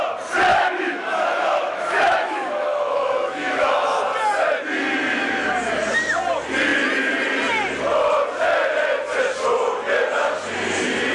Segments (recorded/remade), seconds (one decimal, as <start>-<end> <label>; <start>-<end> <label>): 0.0-0.5 recorded; 0.5-4.0 remade; 4.0-11.1 recorded